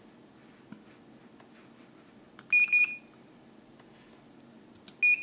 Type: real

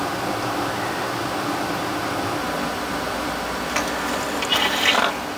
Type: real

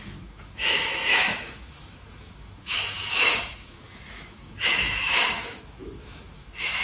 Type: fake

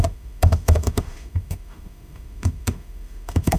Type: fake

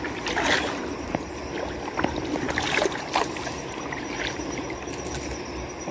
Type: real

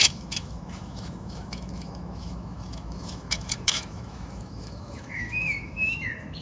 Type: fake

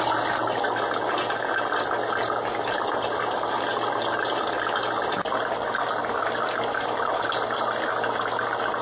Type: real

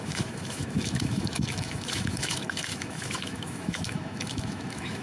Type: fake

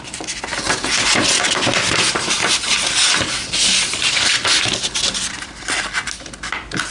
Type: real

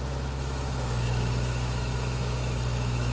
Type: fake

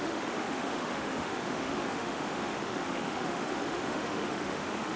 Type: fake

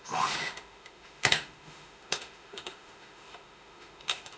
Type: fake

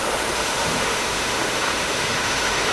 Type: fake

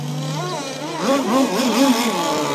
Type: real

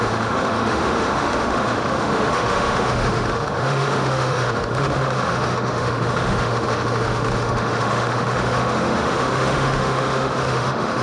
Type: fake